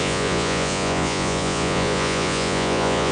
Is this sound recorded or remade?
remade